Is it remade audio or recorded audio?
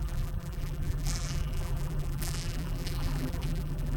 remade